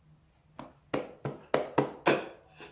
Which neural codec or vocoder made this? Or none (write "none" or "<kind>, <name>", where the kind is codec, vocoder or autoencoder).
none